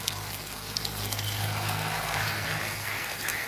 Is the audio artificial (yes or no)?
yes